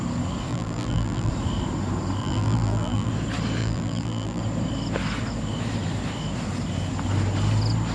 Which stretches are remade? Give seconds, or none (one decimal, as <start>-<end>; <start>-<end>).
0.5-1.3; 2.2-3.1; 3.6-4.4